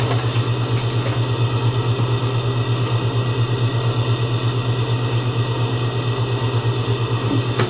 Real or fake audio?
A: real